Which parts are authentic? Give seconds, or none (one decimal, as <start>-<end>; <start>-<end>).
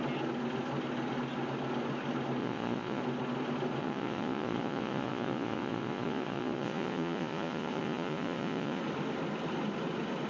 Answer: 0.0-2.4; 3.0-3.8; 8.8-10.3